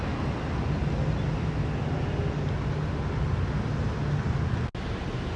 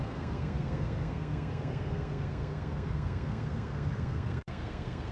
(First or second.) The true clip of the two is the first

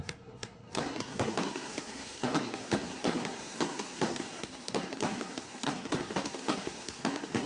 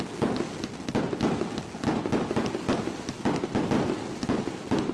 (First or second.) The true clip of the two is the second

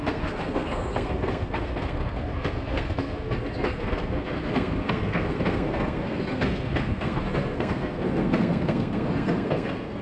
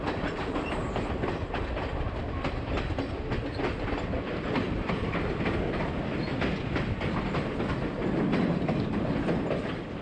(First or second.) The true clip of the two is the second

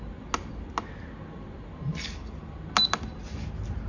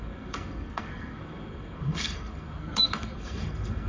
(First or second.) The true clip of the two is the first